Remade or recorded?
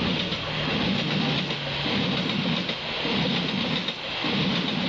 recorded